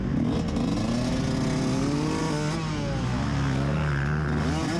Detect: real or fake real